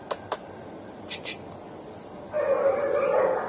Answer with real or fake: real